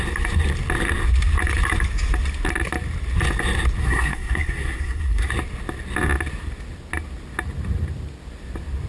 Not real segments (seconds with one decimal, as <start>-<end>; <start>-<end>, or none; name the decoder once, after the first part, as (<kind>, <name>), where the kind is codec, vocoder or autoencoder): 3.8-5.3 (codec, SNAC)